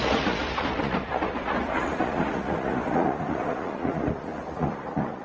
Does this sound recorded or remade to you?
remade